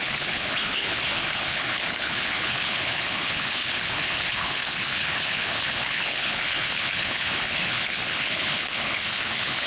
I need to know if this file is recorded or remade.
remade